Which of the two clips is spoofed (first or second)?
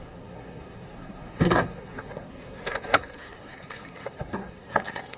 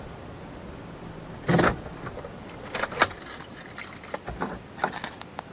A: first